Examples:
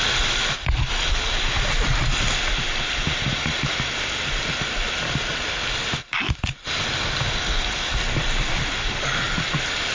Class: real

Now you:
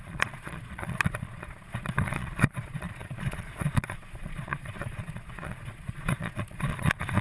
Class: fake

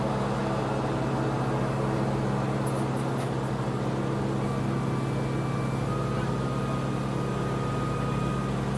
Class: real